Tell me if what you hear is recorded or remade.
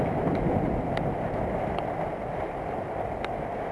recorded